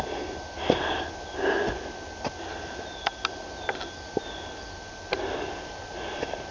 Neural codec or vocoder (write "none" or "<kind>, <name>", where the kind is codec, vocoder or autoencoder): none